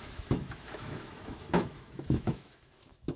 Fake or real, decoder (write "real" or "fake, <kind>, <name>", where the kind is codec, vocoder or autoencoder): fake, autoencoder, DAC-VAE